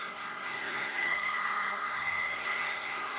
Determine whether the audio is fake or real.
fake